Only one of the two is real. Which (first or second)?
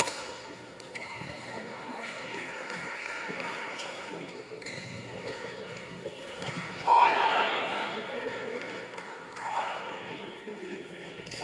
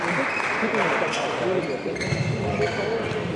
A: second